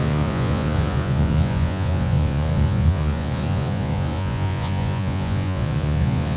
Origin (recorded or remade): remade